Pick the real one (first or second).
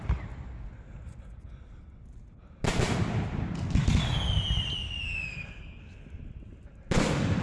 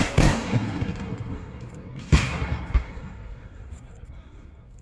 first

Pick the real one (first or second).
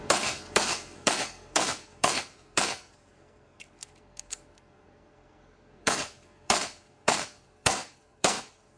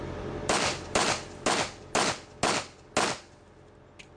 second